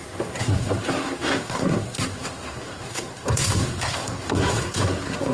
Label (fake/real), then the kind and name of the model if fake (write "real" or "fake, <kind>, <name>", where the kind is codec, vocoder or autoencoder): fake, codec, SNAC